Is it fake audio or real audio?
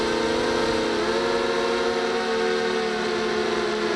real